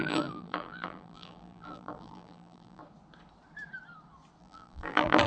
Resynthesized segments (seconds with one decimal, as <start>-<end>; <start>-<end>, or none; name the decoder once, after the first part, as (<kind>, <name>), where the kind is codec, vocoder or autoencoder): 0.0-2.8 (vocoder, BigVGAN v2); 4.4-5.3